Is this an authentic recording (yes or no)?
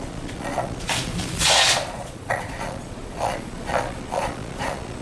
no